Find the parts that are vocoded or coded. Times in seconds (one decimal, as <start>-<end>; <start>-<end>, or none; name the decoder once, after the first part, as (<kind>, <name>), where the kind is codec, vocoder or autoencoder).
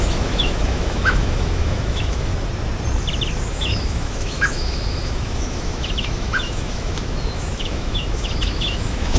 0.0-2.3 (autoencoder, DAC-VAE); 3.5-9.2